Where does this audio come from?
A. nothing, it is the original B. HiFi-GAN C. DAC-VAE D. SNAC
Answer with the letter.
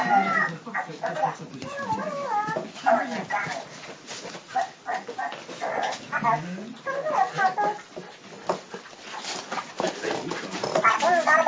A